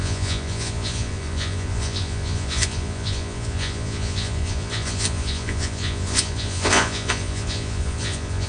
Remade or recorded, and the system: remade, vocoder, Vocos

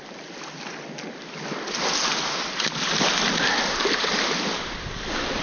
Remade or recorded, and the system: recorded